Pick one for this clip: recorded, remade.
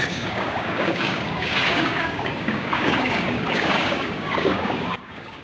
remade